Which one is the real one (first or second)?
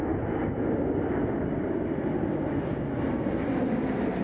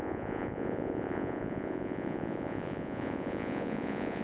first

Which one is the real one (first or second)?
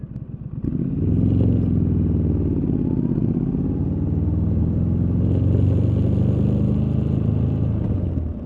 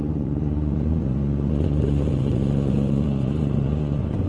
first